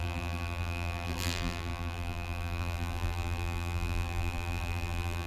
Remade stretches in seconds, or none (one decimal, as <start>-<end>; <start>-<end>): 0.0-5.3